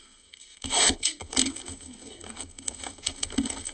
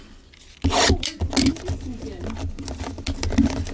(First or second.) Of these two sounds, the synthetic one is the first